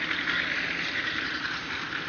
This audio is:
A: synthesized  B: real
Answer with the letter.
B